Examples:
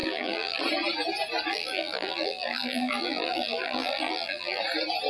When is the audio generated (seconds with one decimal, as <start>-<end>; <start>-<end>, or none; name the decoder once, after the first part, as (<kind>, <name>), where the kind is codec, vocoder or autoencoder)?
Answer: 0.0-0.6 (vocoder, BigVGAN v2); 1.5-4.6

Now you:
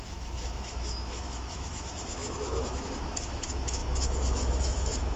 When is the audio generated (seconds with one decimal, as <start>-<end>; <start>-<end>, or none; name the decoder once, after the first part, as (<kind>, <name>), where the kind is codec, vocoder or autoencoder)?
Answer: 0.0-5.2 (autoencoder, DAC-VAE)

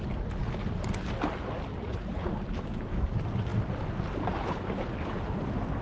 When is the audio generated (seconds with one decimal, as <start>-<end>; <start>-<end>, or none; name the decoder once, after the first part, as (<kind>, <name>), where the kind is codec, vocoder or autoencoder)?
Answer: 1.7-2.4 (vocoder, Vocos)

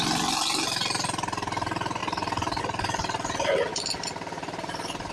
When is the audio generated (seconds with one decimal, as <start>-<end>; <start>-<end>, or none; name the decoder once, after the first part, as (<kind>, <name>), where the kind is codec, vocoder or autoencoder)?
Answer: 2.0-2.6 (vocoder, BigVGAN v2); 3.7-5.1

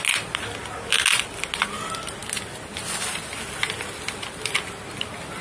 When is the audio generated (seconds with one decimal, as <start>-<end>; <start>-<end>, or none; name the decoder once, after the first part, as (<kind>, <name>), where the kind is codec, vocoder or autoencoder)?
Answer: none

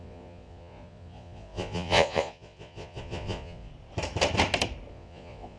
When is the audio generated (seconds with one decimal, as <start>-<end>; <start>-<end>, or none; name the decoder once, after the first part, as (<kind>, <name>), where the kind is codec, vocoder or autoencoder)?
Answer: 0.0-3.7 (vocoder, Vocos); 4.9-5.6

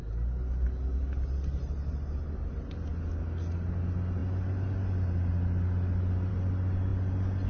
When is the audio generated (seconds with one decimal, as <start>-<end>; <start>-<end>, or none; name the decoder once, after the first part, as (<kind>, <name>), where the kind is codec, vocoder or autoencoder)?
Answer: none

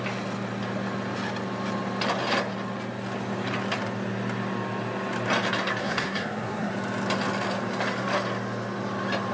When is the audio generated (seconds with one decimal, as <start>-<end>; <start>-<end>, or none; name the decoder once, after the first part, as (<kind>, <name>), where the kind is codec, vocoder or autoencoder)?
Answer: 5.8-6.7 (codec, SNAC)